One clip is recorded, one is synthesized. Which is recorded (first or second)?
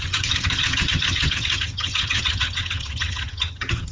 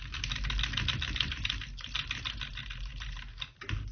second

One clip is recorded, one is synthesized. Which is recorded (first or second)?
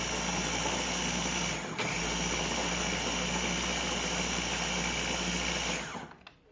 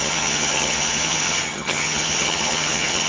first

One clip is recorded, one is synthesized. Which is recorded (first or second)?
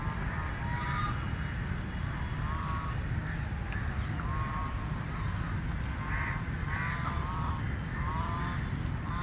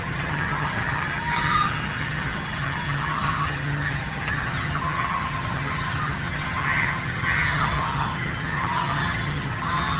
first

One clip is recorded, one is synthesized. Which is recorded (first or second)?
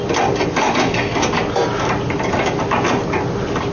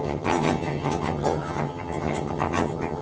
first